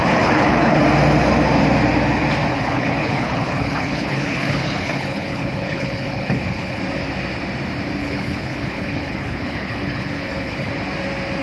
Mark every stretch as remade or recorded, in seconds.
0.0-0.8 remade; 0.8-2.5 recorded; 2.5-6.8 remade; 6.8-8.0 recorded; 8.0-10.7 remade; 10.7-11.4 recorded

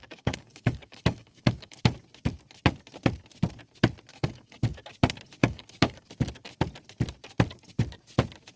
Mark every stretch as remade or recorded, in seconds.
0.0-1.8 remade; 1.8-4.1 recorded; 4.1-4.6 remade; 4.6-5.4 recorded; 5.4-6.1 remade; 6.1-8.6 recorded

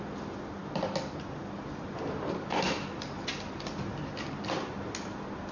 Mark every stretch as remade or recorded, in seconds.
0.0-5.5 recorded

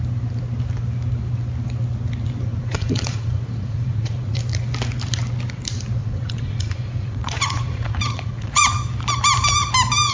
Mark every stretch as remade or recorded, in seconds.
0.0-2.5 recorded; 2.5-4.4 remade; 4.4-6.0 recorded; 6.0-8.7 remade; 8.7-10.1 recorded

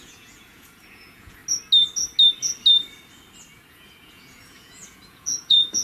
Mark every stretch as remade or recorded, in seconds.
0.0-1.4 remade; 1.4-3.7 recorded; 3.7-5.8 remade

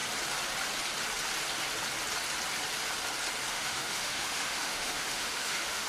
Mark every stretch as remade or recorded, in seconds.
0.0-3.5 recorded; 3.5-5.9 remade

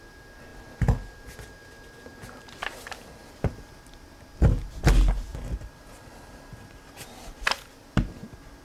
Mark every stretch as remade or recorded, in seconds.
0.0-3.2 recorded; 3.2-3.8 remade; 3.8-5.3 recorded; 5.3-8.1 remade; 8.1-8.6 recorded